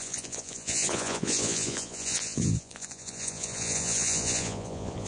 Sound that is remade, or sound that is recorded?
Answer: remade